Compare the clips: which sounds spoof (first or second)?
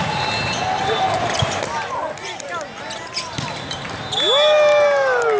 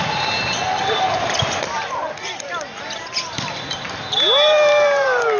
second